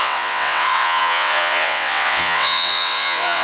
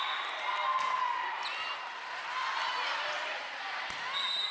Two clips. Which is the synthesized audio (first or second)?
first